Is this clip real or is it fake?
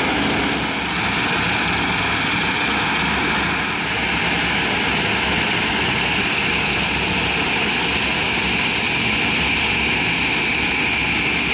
real